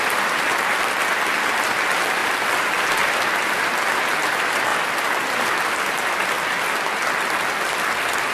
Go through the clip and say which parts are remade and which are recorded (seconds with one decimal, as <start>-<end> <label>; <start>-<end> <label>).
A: 0.0-8.3 recorded